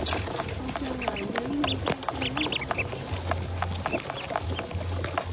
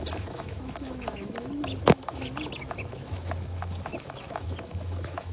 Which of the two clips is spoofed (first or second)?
second